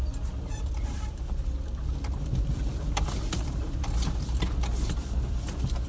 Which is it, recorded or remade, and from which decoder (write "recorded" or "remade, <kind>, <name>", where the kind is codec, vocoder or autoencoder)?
recorded